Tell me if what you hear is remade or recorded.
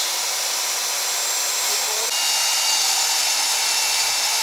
recorded